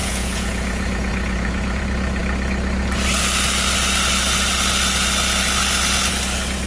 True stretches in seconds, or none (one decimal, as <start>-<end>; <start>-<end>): 1.8-6.7